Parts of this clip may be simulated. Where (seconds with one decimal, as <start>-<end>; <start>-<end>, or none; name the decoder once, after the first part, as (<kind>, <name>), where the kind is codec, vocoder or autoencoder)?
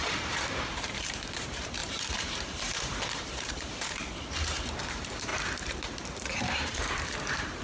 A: 0.0-7.6 (vocoder, BigVGAN v2)